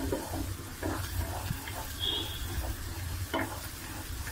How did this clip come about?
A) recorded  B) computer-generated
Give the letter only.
A